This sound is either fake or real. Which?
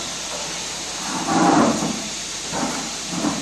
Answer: fake